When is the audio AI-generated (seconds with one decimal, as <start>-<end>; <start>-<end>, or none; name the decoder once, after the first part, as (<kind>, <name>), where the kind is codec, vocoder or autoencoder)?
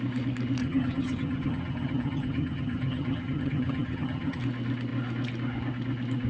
0.6-4.4 (vocoder, HiFi-GAN)